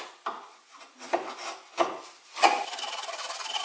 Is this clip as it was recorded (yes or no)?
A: yes